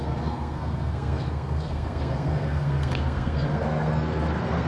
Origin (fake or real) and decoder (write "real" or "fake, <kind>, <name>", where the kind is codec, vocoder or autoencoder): fake, codec, SNAC